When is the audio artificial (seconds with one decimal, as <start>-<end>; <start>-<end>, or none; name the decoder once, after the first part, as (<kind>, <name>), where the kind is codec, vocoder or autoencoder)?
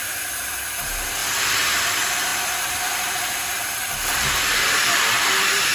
0.0-5.7 (vocoder, BigVGAN v2)